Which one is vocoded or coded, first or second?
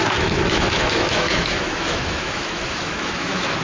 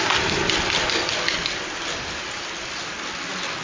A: first